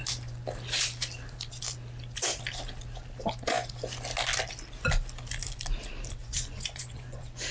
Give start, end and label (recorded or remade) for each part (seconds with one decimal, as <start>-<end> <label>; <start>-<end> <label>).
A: 0.0-6.2 recorded; 6.2-7.5 remade